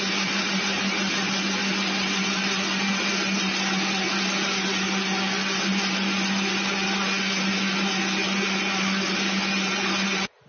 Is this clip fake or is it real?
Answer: real